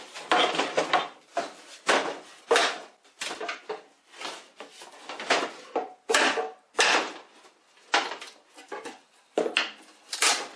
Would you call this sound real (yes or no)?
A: yes